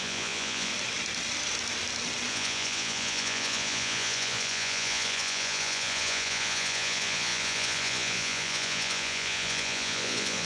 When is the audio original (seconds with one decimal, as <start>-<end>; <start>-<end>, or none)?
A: 0.7-2.3